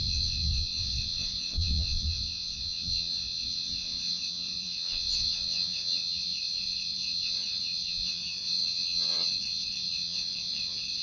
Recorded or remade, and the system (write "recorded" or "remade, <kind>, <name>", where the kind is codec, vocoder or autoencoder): remade, vocoder, WaveNeXt